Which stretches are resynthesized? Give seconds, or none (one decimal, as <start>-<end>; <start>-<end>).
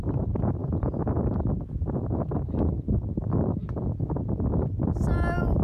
0.6-1.2